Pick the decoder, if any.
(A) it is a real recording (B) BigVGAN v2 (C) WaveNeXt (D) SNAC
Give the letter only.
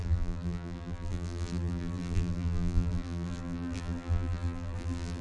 B